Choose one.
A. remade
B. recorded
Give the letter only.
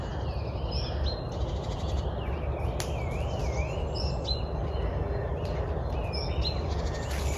B